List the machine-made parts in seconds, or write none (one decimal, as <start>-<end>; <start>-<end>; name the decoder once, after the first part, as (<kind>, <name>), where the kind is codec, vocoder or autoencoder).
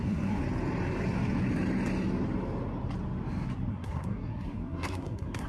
0.0-0.4 (codec, SNAC); 3.7-5.5